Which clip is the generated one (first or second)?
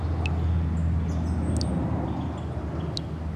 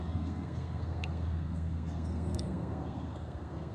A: second